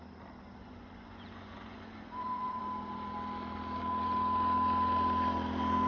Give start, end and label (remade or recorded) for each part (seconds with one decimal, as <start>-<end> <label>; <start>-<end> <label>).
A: 0.0-0.6 recorded; 0.6-2.6 remade; 2.6-5.9 recorded